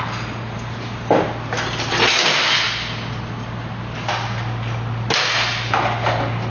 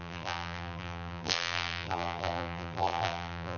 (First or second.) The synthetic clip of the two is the second